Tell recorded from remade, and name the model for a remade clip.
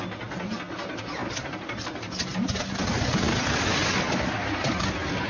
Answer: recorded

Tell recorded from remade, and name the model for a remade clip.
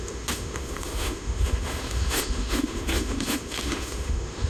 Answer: remade, autoencoder, DAC-VAE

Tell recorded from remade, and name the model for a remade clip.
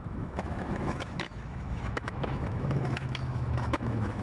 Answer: remade, autoencoder, DAC-VAE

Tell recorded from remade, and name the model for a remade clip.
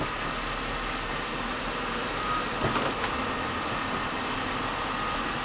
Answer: recorded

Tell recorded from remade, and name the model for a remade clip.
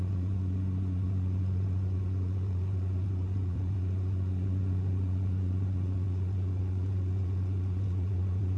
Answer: remade, vocoder, Vocos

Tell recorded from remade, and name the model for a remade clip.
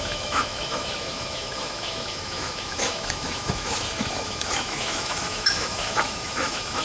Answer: remade, autoencoder, DAC-VAE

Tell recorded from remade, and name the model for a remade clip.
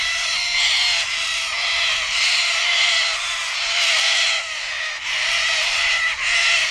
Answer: recorded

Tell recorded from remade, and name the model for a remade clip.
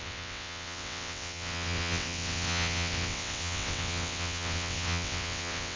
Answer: remade, vocoder, WaveNeXt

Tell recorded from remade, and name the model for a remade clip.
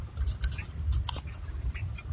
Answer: recorded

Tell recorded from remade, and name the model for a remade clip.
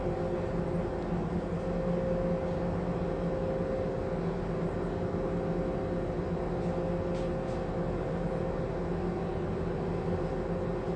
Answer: recorded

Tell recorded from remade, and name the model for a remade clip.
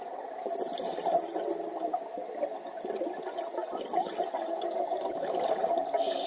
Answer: recorded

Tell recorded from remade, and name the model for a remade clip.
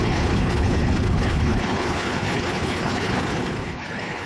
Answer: remade, codec, HILCodec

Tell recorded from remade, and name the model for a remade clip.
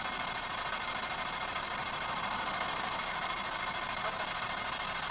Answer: remade, vocoder, BigVGAN v2